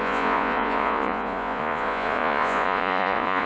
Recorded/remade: remade